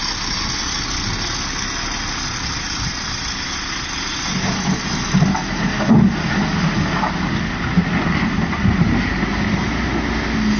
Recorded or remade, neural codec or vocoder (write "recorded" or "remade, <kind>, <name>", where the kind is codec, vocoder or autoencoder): recorded